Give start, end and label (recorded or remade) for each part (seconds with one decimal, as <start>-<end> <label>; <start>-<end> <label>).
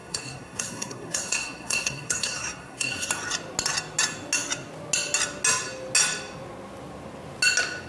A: 0.0-3.1 remade; 3.1-7.9 recorded